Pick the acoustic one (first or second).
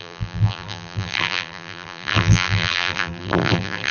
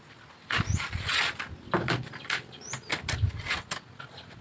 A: second